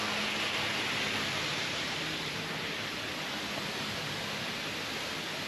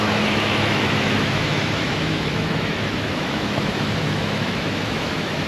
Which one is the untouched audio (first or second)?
first